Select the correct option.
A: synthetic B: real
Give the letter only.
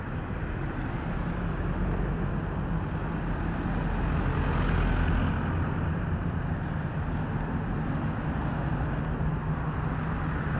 B